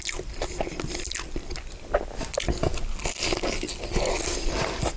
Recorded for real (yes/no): yes